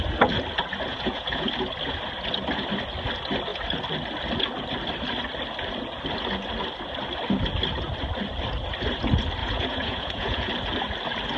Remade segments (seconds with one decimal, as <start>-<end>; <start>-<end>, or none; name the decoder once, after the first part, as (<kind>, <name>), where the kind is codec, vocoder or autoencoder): 0.9-1.5 (vocoder, Vocos); 9.4-10.5